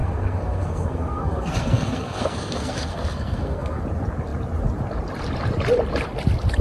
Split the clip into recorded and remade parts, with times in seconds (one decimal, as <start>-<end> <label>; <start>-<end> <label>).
0.0-3.8 remade; 3.8-6.6 recorded